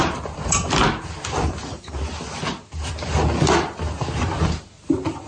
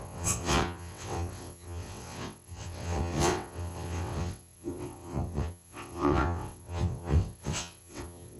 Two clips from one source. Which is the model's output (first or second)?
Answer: second